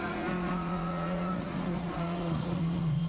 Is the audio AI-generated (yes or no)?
yes